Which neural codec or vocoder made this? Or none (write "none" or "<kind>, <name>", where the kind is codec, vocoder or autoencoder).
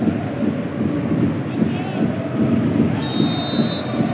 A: none